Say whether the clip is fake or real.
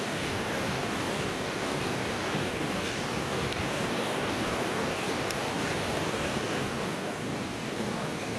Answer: fake